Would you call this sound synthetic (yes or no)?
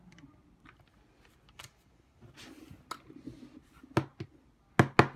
no